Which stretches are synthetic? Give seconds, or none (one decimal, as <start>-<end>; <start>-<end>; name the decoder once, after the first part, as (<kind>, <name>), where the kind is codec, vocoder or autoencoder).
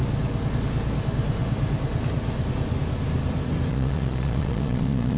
3.7-5.2 (vocoder, Vocos)